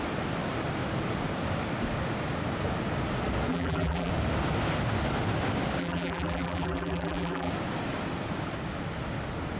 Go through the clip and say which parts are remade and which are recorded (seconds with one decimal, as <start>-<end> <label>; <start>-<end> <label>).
0.0-3.5 recorded; 3.5-4.1 remade; 4.1-5.8 recorded; 5.8-7.5 remade; 7.5-9.6 recorded